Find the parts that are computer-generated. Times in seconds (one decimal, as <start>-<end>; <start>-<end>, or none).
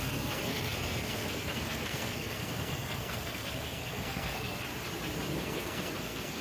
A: 0.0-4.7; 5.4-6.4